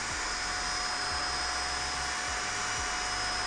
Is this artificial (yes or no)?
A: no